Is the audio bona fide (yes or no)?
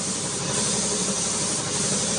no